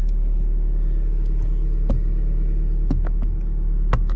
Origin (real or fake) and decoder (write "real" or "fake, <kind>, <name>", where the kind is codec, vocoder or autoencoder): real